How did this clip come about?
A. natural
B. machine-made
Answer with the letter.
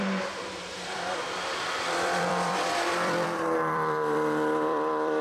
B